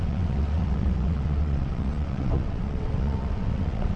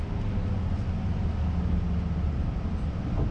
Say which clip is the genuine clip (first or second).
second